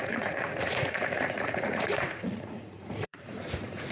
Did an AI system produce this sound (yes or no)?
yes